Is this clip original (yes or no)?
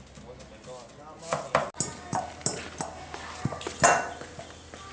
yes